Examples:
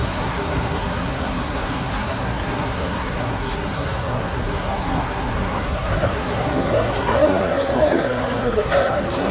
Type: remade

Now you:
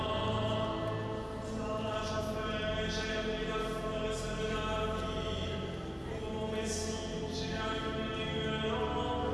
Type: recorded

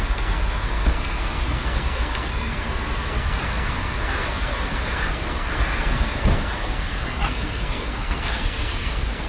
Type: remade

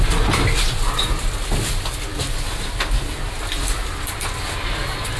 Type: recorded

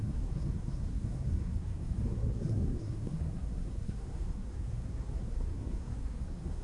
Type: remade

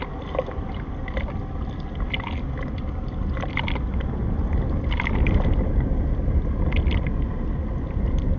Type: recorded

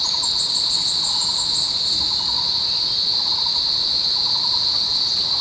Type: recorded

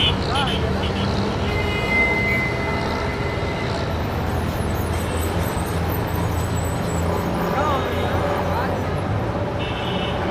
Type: recorded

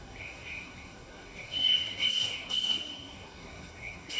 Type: remade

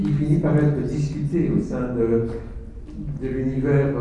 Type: recorded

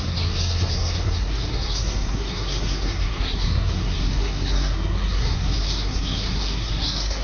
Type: remade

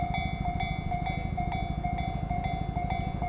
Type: recorded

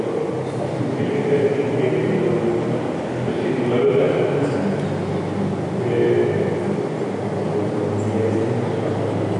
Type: recorded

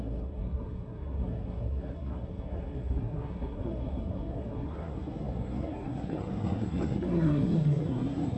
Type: remade